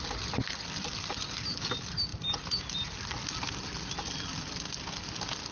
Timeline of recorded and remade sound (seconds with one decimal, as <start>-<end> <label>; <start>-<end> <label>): 0.0-5.5 recorded